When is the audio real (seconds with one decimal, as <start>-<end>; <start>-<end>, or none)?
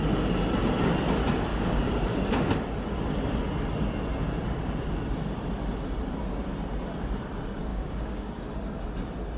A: 0.0-1.5; 2.6-7.7; 8.4-9.4